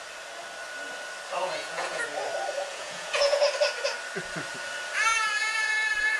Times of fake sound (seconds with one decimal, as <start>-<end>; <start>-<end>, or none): 1.4-2.0; 2.7-3.5; 5.1-6.2